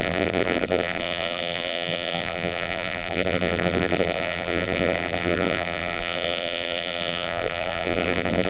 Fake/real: fake